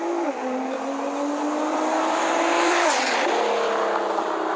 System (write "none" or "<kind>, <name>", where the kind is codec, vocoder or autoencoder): none